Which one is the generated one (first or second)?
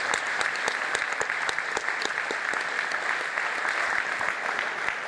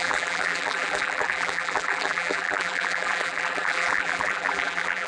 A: second